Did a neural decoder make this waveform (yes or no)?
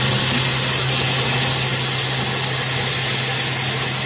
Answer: no